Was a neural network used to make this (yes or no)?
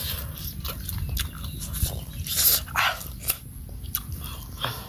no